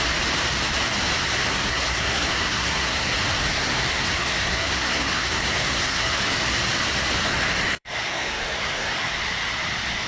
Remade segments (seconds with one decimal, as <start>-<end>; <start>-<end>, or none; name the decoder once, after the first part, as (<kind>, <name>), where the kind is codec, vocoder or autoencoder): 1.5-3.1 (codec, SNAC); 3.5-6.2; 7.8-9.1